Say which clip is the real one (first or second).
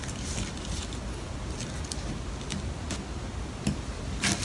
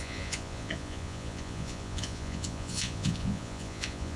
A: first